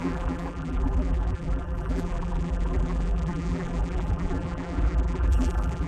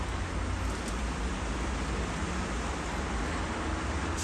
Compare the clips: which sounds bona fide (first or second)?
second